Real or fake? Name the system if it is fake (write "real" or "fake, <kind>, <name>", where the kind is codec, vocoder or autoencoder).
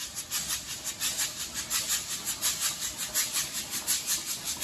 real